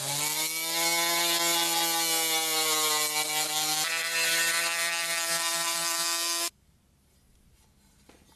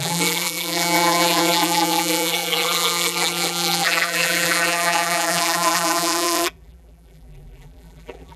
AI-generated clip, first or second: second